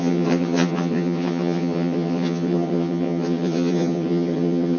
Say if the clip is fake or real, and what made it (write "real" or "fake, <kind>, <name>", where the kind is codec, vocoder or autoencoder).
fake, vocoder, HiFi-GAN